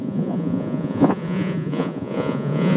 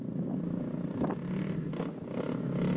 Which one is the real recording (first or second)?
second